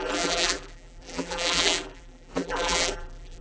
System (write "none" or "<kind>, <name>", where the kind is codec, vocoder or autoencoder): vocoder, BigVGAN v2